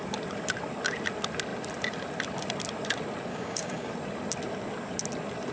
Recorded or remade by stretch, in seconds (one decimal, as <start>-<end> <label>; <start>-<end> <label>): 0.0-3.3 recorded; 3.3-3.9 remade; 3.9-5.5 recorded

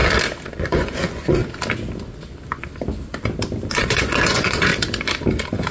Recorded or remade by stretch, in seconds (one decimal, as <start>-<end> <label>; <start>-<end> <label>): 0.0-0.6 recorded; 0.6-1.4 remade; 1.4-3.7 recorded; 3.7-4.7 remade; 4.7-5.7 recorded

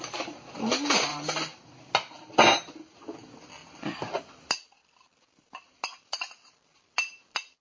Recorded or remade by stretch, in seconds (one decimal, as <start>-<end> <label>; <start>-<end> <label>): 0.0-1.1 recorded; 1.1-1.9 remade; 1.9-7.6 recorded